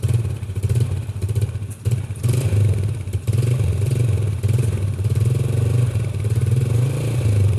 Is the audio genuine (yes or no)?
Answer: no